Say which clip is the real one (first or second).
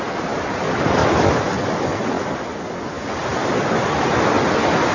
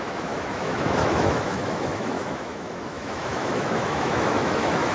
first